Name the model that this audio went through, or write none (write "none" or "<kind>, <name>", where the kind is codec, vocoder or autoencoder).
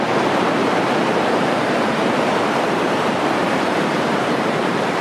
vocoder, BigVGAN v2